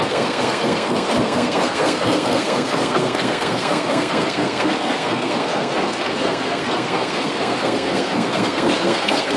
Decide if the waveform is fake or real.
fake